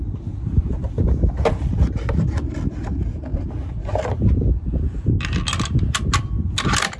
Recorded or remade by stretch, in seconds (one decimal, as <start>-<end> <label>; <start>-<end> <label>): 0.0-7.0 recorded